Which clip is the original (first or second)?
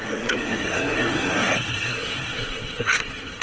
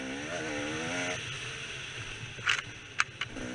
second